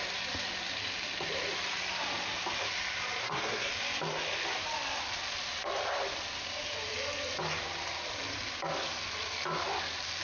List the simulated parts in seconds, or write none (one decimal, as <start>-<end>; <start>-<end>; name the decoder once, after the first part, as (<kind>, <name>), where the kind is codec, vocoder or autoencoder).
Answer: 3.2-3.7 (codec, SNAC)